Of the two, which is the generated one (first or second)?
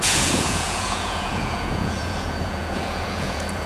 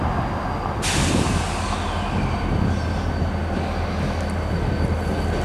first